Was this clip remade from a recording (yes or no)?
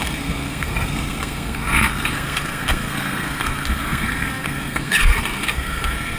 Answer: yes